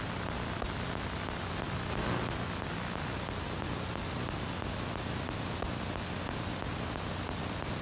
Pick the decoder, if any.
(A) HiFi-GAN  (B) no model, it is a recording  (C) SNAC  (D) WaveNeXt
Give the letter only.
B